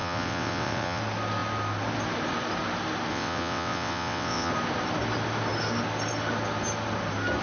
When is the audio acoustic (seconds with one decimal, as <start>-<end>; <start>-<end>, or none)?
1.0-3.1; 4.5-7.4